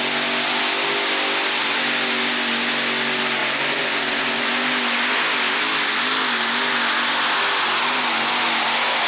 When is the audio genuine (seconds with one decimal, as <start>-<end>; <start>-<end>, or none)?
0.0-3.4; 4.5-9.1